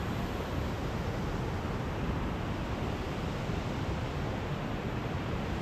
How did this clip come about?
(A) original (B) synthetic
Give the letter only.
A